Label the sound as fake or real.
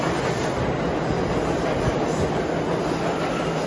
real